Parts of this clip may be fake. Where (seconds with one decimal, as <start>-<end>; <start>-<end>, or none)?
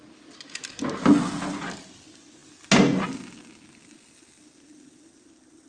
none